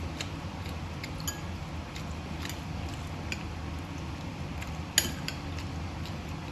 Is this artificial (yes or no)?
no